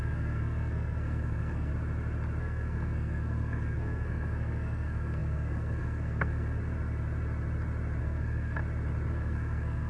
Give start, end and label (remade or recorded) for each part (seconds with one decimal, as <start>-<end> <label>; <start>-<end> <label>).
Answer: 0.0-1.7 remade; 1.7-2.4 recorded; 2.4-6.6 remade; 6.6-8.0 recorded; 8.0-8.6 remade; 8.6-9.1 recorded; 9.1-9.9 remade